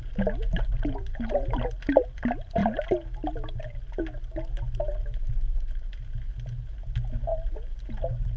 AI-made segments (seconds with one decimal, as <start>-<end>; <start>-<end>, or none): none